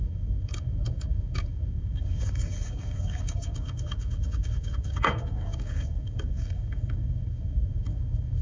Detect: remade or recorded remade